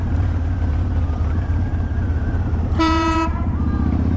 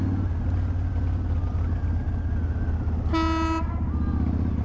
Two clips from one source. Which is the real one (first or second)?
second